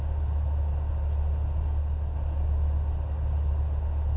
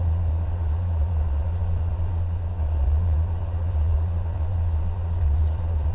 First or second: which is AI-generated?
second